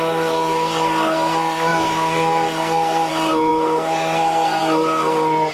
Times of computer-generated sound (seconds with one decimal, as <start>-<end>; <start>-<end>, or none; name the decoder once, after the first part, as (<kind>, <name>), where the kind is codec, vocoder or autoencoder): 0.0-5.5 (codec, SNAC)